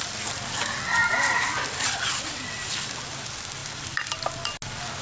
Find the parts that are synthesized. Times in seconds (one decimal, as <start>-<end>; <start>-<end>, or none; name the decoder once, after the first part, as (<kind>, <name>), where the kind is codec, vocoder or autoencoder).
1.0-3.0 (vocoder, BigVGAN v2); 3.6-4.6